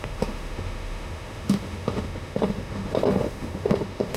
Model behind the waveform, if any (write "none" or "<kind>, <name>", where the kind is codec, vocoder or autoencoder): autoencoder, DAC-VAE